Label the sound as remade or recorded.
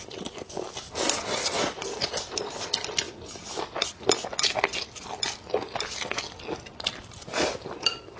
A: recorded